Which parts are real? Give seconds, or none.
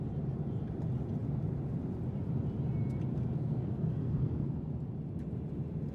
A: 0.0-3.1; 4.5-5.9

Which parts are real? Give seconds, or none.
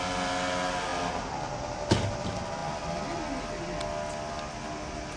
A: 0.0-5.2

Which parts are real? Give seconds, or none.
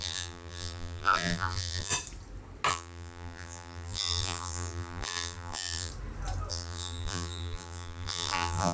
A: 1.9-2.7; 5.9-6.5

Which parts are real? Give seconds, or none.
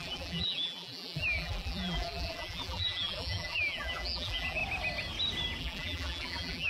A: 4.6-5.6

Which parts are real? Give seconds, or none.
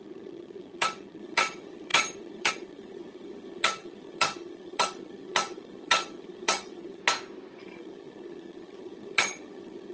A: 7.0-7.6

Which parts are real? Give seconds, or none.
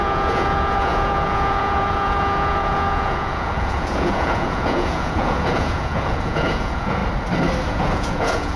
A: 7.0-7.7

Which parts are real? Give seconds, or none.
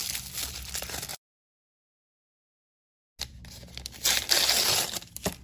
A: 0.0-5.4